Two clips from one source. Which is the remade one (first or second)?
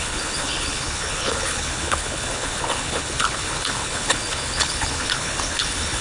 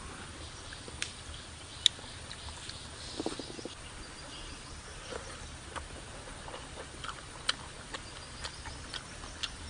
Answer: first